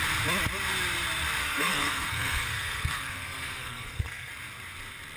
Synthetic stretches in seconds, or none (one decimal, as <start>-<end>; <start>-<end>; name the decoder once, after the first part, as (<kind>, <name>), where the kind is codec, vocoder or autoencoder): 1.4-4.3 (codec, SNAC)